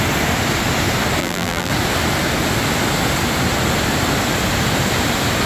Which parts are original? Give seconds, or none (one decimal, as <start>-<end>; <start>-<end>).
0.0-1.2; 1.7-5.5